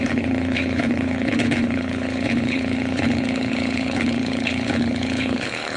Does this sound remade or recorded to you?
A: remade